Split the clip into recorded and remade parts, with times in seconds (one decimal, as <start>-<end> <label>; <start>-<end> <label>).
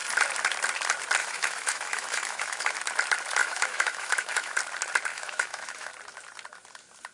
0.0-1.2 recorded; 1.2-2.7 remade; 2.7-3.4 recorded; 3.4-4.6 remade; 4.6-5.1 recorded; 5.1-5.9 remade; 5.9-7.1 recorded